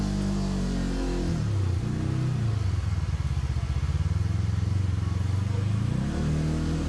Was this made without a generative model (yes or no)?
yes